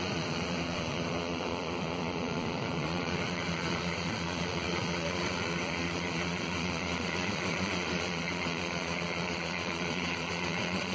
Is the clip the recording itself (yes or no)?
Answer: no